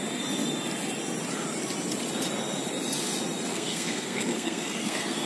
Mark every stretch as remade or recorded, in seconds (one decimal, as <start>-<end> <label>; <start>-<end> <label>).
0.0-3.5 recorded; 3.5-5.3 remade